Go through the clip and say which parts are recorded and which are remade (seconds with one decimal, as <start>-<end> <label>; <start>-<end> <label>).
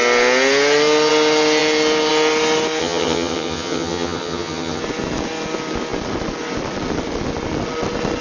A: 0.0-2.8 recorded; 2.8-4.8 remade; 4.8-8.2 recorded